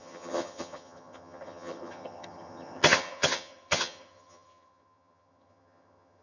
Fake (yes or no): yes